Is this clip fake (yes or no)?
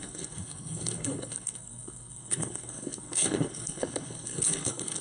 yes